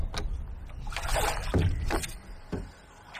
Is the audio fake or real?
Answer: real